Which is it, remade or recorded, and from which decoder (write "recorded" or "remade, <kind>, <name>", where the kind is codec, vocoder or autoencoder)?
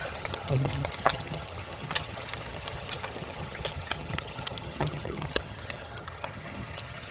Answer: remade, vocoder, HiFi-GAN